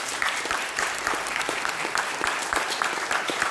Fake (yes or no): yes